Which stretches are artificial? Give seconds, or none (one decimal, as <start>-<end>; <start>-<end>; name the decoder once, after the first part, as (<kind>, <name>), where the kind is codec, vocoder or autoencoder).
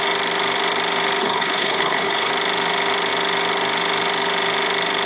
1.2-2.3 (codec, HILCodec)